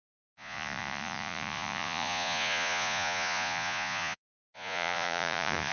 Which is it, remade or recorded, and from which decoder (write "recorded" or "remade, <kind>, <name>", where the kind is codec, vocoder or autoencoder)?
remade, vocoder, Vocos